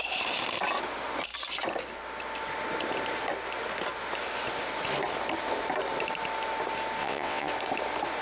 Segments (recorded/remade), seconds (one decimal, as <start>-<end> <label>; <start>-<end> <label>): 0.0-7.0 recorded; 7.0-7.5 remade; 7.5-8.2 recorded